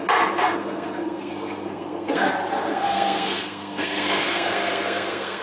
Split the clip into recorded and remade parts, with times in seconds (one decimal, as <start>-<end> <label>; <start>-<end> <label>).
0.0-0.4 recorded; 0.4-2.3 remade; 2.3-2.7 recorded; 2.7-5.4 remade